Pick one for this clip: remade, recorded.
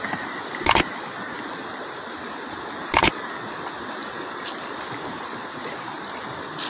recorded